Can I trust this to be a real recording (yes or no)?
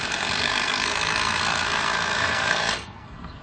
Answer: no